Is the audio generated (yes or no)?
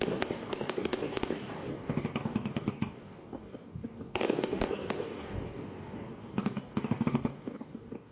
yes